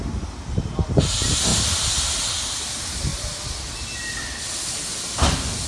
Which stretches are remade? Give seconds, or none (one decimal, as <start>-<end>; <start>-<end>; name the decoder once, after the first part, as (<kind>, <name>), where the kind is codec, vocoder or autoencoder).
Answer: none